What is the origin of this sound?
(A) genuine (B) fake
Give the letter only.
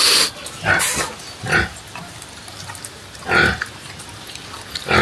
A